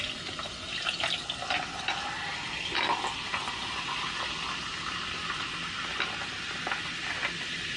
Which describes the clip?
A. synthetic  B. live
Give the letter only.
B